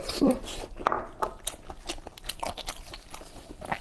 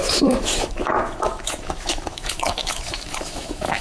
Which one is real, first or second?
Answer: first